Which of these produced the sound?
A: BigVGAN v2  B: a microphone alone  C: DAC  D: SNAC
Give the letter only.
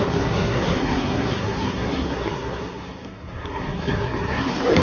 D